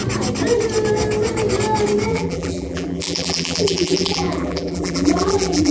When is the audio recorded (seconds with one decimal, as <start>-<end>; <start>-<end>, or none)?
0.0-2.1